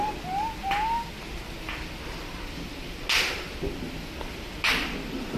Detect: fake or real real